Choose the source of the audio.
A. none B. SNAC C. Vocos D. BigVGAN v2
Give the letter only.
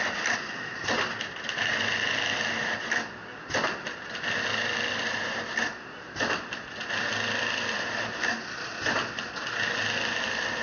A